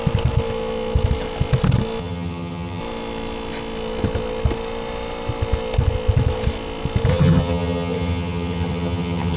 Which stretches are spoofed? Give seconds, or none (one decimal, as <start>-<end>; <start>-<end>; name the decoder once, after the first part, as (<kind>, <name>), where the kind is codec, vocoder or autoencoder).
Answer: 2.0-2.8 (vocoder, HiFi-GAN); 7.1-9.4